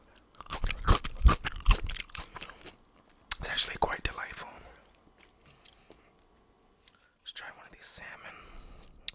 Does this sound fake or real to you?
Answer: real